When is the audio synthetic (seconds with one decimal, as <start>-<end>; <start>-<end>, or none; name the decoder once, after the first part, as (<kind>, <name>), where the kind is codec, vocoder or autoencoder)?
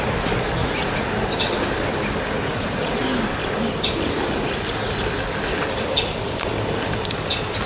0.6-1.1 (vocoder, Vocos); 2.5-3.0